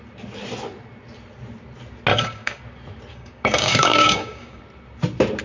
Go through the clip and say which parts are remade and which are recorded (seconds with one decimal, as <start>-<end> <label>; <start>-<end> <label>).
0.0-2.1 recorded; 2.1-2.6 remade; 2.6-3.1 recorded; 3.1-4.6 remade; 4.6-5.4 recorded